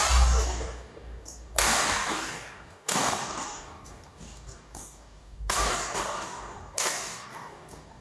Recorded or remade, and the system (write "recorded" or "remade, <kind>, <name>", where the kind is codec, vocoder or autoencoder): remade, codec, DAC